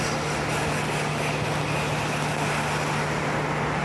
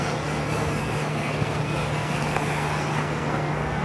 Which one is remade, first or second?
second